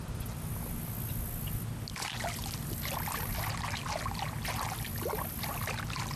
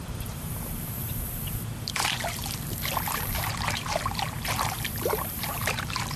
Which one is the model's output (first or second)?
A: second